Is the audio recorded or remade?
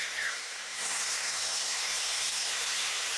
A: remade